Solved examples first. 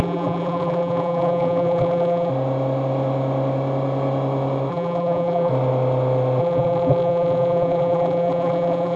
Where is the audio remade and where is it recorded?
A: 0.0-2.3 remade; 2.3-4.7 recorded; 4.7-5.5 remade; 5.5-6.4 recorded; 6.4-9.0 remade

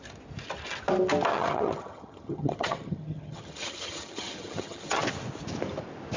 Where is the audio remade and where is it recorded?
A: 0.0-1.3 recorded; 1.3-5.0 remade; 5.0-6.2 recorded

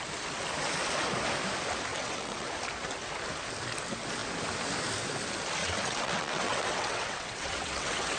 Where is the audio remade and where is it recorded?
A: 0.0-1.9 recorded; 1.9-2.5 remade; 2.5-5.6 recorded; 5.6-8.2 remade

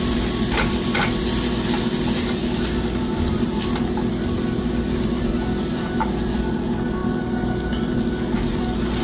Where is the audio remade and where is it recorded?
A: 0.0-9.0 recorded

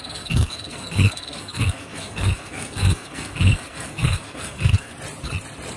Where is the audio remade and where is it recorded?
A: 0.0-4.9 remade; 4.9-5.8 recorded

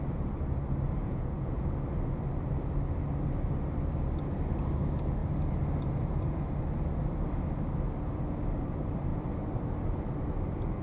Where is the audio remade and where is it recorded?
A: 0.0-1.0 recorded; 1.0-1.6 remade; 1.6-10.8 recorded

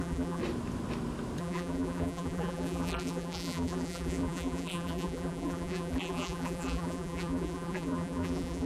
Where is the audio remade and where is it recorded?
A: 0.0-0.4 remade; 0.4-1.4 recorded; 1.4-8.7 remade

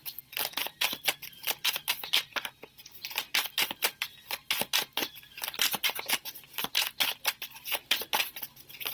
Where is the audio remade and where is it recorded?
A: 0.0-0.4 recorded; 0.4-1.7 remade; 1.7-2.3 recorded; 2.3-2.8 remade; 2.8-5.0 recorded; 5.0-6.7 remade; 6.7-8.9 recorded